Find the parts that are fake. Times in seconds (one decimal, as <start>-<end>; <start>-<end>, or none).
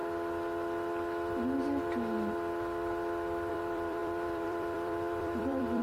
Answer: 3.5-5.8